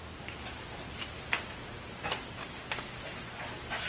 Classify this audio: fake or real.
real